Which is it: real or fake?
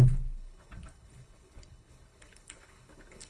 fake